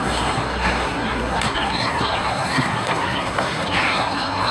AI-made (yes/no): yes